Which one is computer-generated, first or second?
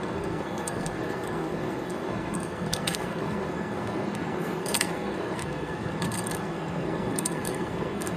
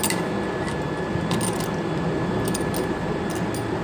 first